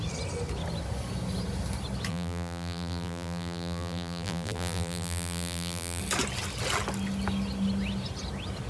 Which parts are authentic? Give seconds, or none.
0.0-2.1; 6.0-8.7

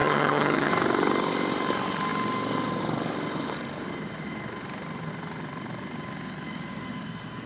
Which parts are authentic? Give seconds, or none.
0.7-7.5

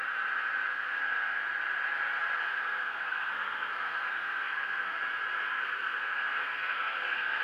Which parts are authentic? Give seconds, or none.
0.0-0.7; 1.4-2.5; 5.0-5.5

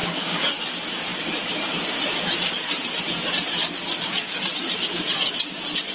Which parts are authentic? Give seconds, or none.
0.5-5.9

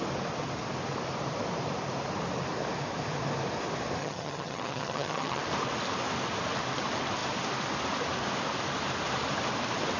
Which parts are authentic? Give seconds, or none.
0.0-4.0; 5.4-10.0

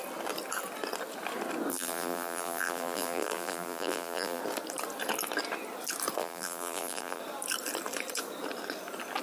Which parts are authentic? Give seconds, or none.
0.0-1.7; 4.4-6.2; 7.2-9.2

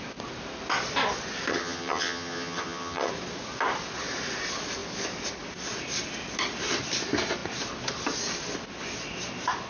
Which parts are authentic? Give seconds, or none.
0.0-1.5; 3.1-9.7

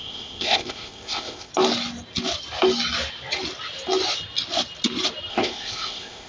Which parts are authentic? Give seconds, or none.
1.5-5.3